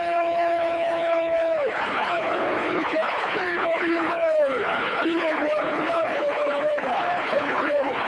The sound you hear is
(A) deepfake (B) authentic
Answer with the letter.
A